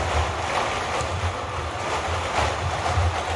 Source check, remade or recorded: recorded